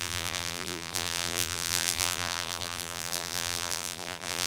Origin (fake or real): fake